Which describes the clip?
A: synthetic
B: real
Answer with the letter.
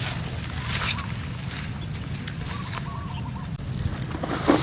B